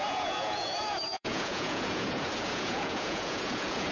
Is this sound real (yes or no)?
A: no